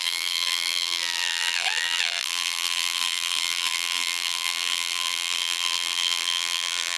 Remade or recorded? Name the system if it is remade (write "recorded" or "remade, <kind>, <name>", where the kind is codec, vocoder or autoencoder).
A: remade, vocoder, BigVGAN v2